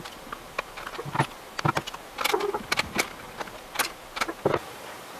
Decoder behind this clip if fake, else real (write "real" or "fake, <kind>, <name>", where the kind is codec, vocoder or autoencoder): real